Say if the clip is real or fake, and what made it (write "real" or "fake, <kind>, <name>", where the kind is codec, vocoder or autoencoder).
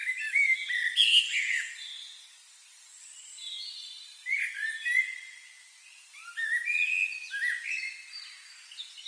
real